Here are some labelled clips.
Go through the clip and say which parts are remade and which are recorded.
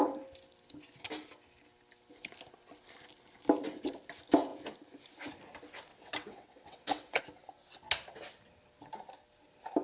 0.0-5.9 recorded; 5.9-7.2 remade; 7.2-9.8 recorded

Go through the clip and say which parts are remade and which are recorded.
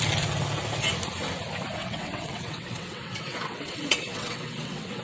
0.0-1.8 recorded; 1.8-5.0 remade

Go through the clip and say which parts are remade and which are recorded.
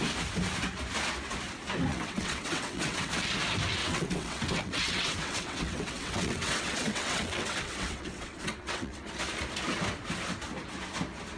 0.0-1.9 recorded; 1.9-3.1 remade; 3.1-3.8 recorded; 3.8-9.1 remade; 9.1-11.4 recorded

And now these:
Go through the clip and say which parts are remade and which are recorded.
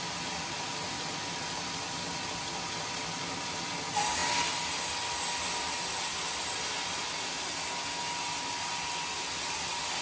0.0-10.0 recorded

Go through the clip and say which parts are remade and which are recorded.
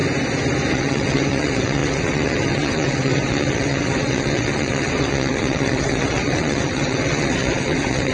0.0-0.7 recorded; 0.7-8.1 remade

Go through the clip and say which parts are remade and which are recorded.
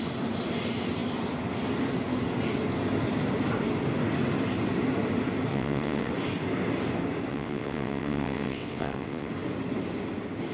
0.0-5.5 recorded; 5.5-6.1 remade; 6.1-7.3 recorded; 7.3-9.3 remade; 9.3-10.5 recorded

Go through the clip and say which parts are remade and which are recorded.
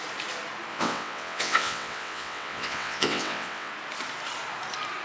0.0-0.7 recorded; 0.7-3.7 remade; 3.7-5.0 recorded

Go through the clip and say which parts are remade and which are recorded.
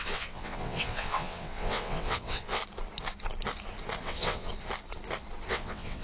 0.0-2.6 remade; 2.6-4.0 recorded; 4.0-4.5 remade; 4.5-5.5 recorded; 5.5-6.0 remade